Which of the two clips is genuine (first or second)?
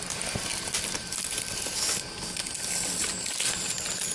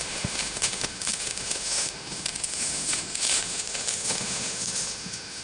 first